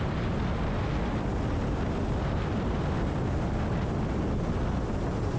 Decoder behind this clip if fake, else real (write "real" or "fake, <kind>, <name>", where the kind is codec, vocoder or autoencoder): real